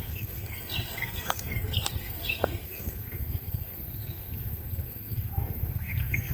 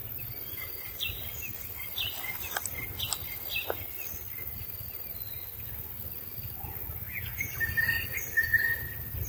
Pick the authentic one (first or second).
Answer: second